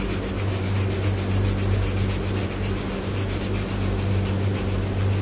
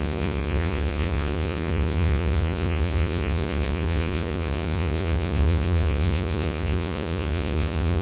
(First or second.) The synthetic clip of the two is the second